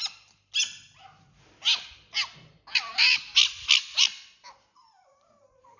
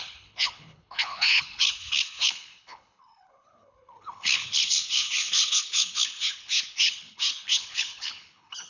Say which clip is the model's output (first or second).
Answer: second